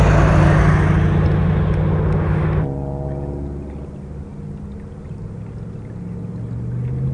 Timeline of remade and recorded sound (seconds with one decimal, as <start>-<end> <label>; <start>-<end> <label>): 0.0-7.1 recorded